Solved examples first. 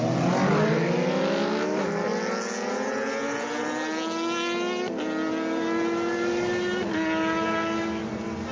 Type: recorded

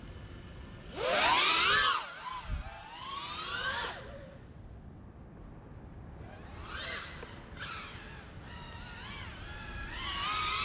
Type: recorded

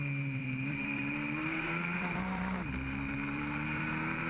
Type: remade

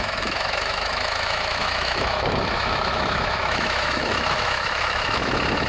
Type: remade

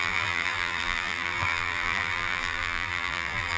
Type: remade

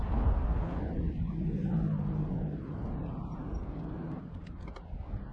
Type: recorded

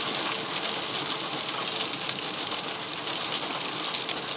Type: recorded